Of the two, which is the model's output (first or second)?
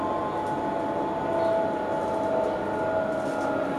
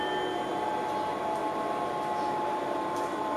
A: second